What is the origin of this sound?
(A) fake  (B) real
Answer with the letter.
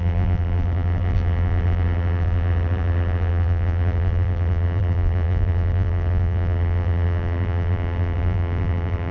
A